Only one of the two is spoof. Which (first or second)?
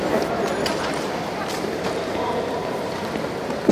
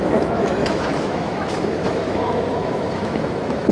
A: second